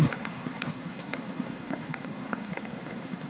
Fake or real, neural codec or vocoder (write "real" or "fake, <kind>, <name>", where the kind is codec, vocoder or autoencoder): fake, codec, SNAC